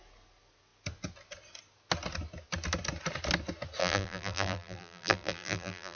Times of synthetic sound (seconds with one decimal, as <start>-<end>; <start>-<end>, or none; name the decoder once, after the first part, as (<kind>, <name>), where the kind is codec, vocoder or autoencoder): 3.8-6.0 (vocoder, BigVGAN v2)